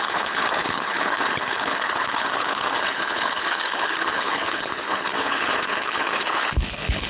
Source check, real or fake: fake